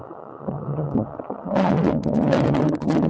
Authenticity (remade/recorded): remade